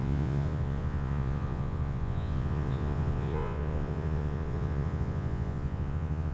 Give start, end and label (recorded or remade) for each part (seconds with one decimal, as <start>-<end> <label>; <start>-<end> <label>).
0.0-6.3 remade

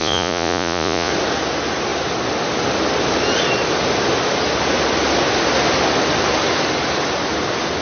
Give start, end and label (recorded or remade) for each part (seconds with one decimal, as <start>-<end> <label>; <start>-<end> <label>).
0.0-1.1 remade; 1.1-7.8 recorded